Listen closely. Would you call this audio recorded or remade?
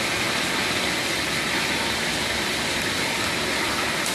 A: recorded